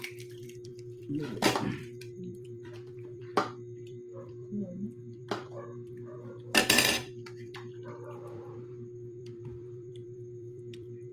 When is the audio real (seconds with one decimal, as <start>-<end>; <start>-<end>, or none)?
none